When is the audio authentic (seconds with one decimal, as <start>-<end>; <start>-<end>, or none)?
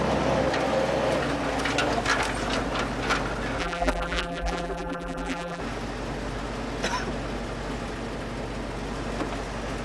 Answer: 0.0-3.6; 5.6-9.8